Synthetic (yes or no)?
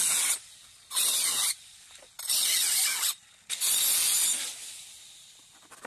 no